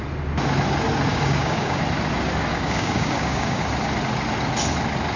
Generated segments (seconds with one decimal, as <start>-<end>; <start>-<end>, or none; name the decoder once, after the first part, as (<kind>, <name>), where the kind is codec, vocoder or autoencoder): 1.1-1.8 (codec, DAC); 2.5-3.6

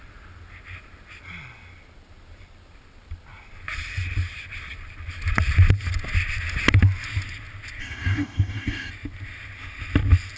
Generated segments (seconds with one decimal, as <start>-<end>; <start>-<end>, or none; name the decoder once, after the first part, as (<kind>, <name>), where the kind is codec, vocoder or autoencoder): 7.8-8.9 (codec, DAC)